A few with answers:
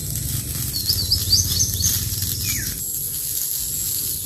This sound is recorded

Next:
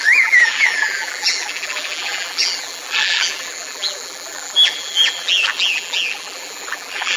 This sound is remade